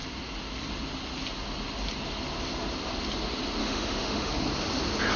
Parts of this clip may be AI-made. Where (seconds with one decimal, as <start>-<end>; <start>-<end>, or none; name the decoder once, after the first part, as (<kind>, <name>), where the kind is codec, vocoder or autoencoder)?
3.6-4.3 (autoencoder, DAC-VAE)